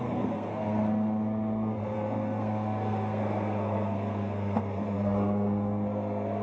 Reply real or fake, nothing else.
fake